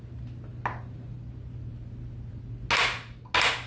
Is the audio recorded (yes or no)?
yes